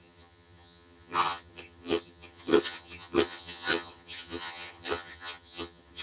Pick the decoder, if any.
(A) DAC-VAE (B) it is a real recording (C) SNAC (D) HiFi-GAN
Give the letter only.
D